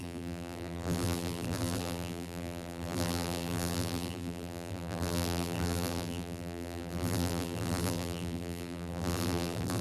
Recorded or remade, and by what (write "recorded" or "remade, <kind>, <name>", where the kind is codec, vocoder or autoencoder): remade, vocoder, BigVGAN v2